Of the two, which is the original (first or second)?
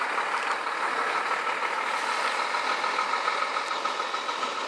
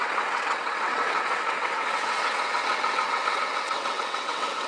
first